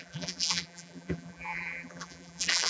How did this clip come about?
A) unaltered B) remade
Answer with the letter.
B